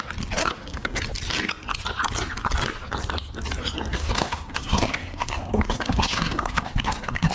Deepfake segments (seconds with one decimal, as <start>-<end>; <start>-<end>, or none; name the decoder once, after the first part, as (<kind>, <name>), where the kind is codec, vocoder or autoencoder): 0.4-1.0 (codec, SNAC); 3.9-7.3